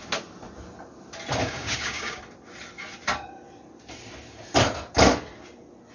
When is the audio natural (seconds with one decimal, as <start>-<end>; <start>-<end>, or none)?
0.0-1.4; 2.2-5.9